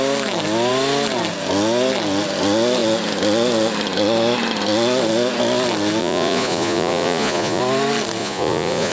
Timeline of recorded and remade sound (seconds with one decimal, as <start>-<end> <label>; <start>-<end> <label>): 0.0-6.0 recorded; 6.0-7.6 remade; 7.6-8.2 recorded; 8.2-8.9 remade